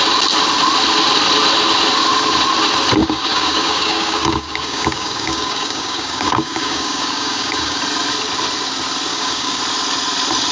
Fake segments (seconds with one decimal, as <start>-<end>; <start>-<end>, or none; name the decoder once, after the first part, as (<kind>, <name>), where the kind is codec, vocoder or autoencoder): 3.0-7.8 (codec, DAC); 9.1-9.6